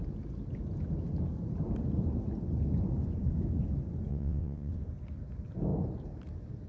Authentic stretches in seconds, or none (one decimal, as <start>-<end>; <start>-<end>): 0.0-4.1; 4.7-6.7